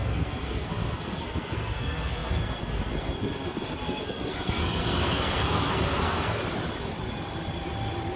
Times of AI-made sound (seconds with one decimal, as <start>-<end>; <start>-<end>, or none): 0.0-6.4